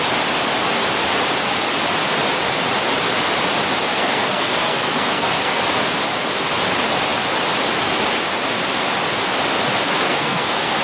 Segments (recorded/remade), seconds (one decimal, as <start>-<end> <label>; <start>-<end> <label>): 0.0-3.9 recorded; 3.9-5.6 remade; 5.6-9.8 recorded; 9.8-10.8 remade